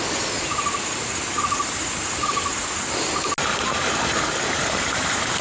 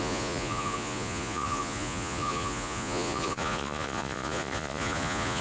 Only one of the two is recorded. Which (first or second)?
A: first